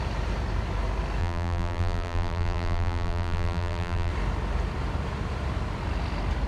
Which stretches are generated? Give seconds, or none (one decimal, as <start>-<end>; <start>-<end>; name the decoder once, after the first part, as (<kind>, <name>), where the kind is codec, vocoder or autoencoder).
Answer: 1.2-4.1 (vocoder, BigVGAN v2)

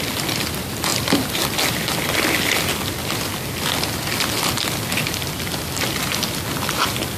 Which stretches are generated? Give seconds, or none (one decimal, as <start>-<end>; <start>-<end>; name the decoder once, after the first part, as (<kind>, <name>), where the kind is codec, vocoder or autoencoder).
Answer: none

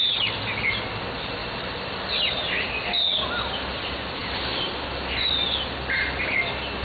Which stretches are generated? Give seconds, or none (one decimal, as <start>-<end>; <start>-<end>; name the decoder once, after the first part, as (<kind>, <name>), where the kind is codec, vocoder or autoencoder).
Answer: 1.4-2.7 (vocoder, BigVGAN v2); 4.2-4.7